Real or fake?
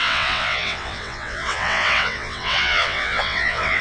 fake